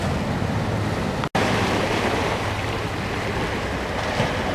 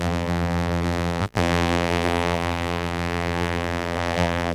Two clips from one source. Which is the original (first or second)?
first